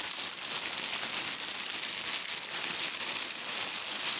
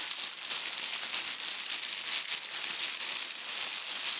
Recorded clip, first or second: second